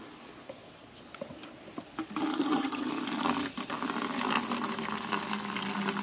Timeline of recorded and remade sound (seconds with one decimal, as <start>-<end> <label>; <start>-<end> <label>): 0.0-2.3 recorded; 2.3-2.9 remade; 2.9-6.0 recorded